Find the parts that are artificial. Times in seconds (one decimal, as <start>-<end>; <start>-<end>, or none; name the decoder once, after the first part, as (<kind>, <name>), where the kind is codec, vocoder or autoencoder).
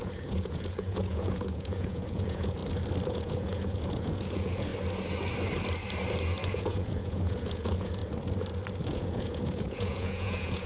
0.0-2.6 (vocoder, Vocos); 3.1-4.7; 6.5-8.0; 8.8-10.7